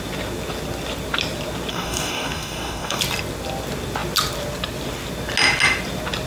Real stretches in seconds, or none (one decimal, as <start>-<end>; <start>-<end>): 0.0-1.7; 3.0-6.3

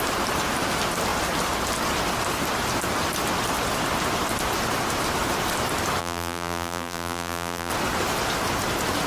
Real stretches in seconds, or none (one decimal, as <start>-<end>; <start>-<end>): 0.0-6.0; 7.7-9.1

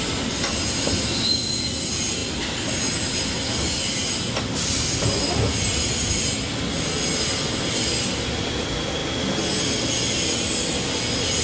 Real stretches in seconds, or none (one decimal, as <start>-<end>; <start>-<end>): 0.0-11.4